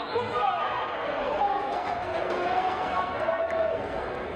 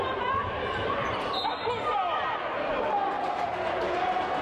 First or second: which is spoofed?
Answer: first